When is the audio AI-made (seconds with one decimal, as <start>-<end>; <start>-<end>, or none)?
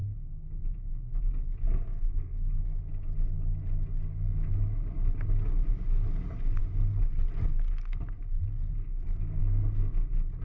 1.7-2.6; 8.7-9.4